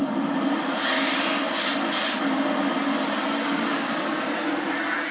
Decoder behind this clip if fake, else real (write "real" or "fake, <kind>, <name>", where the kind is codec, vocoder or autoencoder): real